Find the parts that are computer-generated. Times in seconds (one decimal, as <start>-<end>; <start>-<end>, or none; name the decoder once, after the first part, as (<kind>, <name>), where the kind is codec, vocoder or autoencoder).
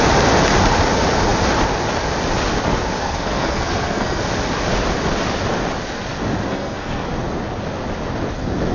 3.0-4.2 (codec, SNAC); 6.5-7.1